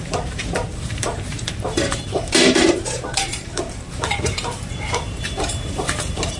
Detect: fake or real fake